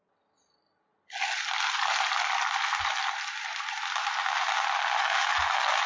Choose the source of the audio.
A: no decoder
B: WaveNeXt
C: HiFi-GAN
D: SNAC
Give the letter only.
A